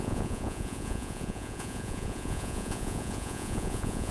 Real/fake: fake